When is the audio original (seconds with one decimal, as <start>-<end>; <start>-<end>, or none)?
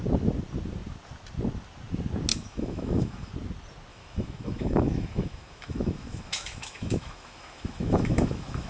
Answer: 0.0-2.3; 3.3-3.9